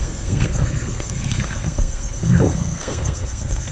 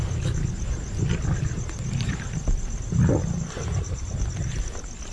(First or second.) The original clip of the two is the second